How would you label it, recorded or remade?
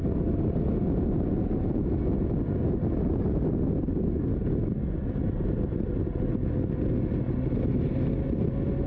recorded